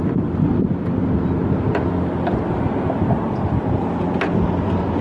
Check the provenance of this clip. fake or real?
real